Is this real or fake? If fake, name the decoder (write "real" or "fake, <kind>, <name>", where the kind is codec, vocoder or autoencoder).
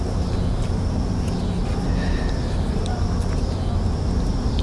real